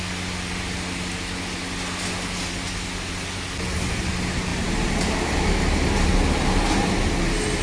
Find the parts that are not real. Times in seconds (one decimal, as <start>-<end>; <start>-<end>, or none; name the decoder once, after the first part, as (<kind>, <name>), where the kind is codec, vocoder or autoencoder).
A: none